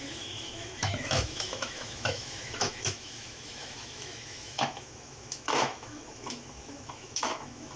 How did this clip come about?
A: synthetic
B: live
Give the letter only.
A